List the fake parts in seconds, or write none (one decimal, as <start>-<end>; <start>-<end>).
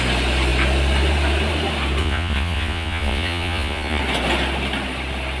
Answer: 2.0-4.0